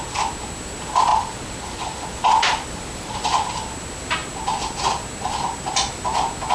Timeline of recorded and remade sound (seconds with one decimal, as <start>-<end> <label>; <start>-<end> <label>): 0.0-1.1 recorded; 1.1-3.2 remade; 3.2-6.5 recorded